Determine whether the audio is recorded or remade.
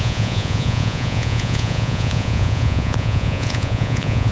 remade